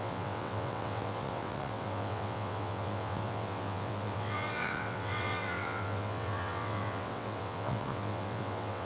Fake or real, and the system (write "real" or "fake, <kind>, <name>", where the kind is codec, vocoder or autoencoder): fake, vocoder, WaveNeXt